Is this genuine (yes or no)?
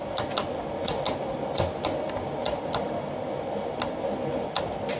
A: yes